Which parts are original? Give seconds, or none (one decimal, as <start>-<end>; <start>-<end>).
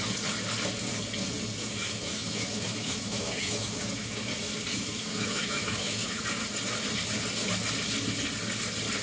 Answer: 0.0-1.6; 4.3-4.7; 6.2-9.0